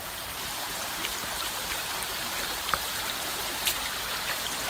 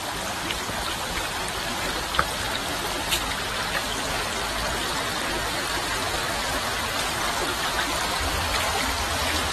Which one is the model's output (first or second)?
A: first